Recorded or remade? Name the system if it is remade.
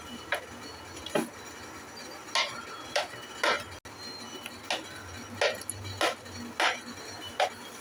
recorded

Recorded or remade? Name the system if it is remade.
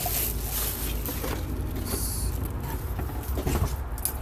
recorded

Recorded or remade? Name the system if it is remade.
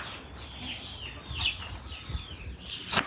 recorded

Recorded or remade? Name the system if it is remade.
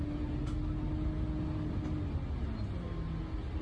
recorded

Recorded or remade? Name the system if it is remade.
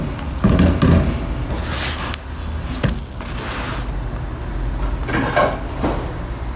recorded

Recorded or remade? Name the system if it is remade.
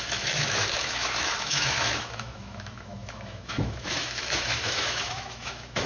remade, autoencoder, DAC-VAE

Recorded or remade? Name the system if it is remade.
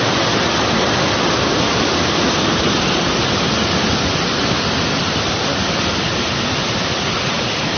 recorded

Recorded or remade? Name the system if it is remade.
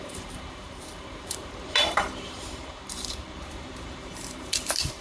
remade, vocoder, BigVGAN v2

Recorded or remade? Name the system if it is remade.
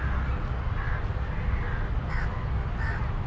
recorded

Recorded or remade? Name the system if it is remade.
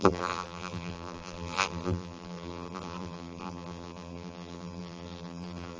remade, vocoder, BigVGAN v2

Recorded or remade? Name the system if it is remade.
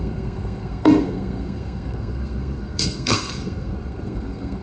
remade, codec, SNAC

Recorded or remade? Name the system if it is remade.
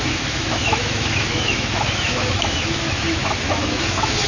remade, autoencoder, DAC-VAE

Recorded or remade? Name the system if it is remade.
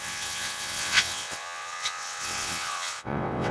remade, vocoder, WaveNeXt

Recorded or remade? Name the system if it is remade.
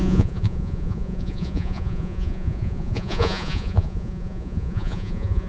remade, vocoder, Vocos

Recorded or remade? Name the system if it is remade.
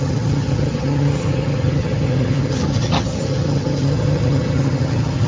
remade, vocoder, HiFi-GAN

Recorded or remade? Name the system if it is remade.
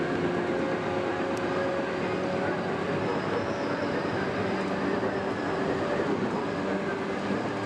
recorded